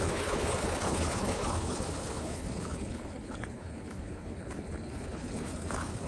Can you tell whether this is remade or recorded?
remade